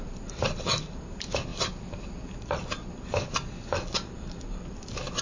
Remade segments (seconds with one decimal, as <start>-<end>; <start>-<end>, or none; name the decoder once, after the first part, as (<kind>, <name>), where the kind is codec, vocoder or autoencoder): none